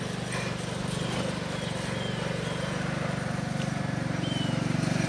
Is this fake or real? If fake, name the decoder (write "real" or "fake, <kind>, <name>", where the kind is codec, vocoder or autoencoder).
real